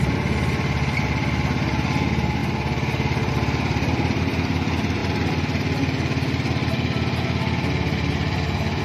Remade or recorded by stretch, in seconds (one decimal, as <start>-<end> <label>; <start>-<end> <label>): 0.0-8.8 recorded